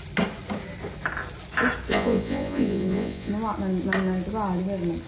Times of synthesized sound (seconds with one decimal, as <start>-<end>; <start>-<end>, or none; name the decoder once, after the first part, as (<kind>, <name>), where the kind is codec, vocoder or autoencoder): 1.9-3.3 (vocoder, Vocos)